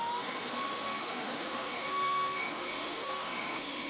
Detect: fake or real fake